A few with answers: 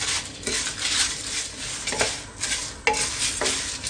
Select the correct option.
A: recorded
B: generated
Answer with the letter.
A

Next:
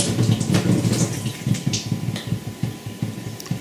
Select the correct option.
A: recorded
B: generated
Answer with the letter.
A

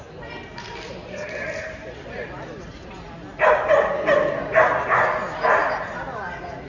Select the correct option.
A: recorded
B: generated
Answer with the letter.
A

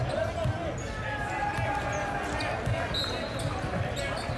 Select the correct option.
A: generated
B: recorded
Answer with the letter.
B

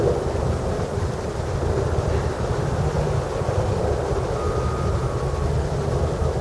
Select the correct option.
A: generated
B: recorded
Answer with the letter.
B